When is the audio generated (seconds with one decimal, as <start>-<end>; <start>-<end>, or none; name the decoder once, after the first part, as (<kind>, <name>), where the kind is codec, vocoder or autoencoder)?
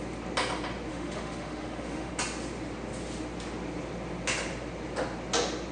0.9-2.1 (autoencoder, DAC-VAE)